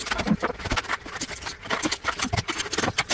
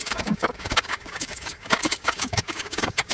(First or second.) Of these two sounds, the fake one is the second